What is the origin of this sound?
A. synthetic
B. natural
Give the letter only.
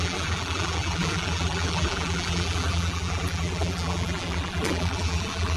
A